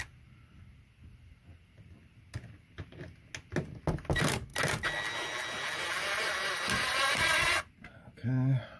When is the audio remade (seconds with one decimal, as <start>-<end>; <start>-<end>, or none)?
none